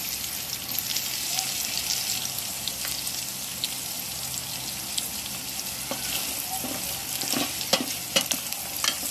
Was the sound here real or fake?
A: real